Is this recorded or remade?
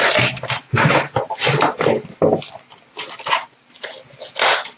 recorded